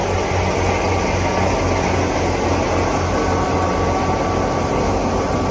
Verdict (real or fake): real